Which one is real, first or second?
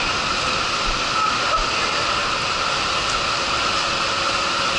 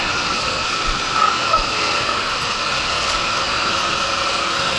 first